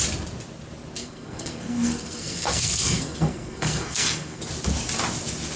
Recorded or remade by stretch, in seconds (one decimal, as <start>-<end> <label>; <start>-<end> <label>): 0.0-1.0 recorded; 1.0-4.4 remade; 4.4-5.6 recorded